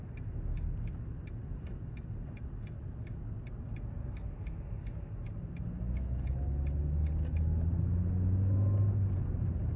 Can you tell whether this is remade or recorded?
recorded